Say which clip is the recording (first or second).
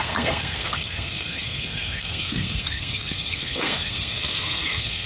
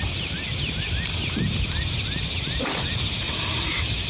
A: second